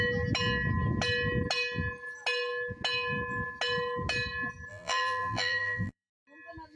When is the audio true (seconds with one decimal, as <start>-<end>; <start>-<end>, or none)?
0.0-4.7; 6.1-6.8